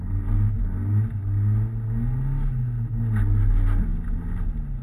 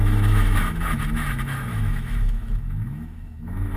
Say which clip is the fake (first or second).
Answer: second